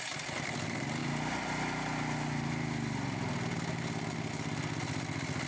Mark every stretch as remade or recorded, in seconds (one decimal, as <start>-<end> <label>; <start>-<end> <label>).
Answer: 0.0-5.5 recorded